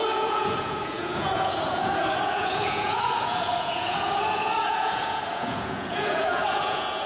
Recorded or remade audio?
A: remade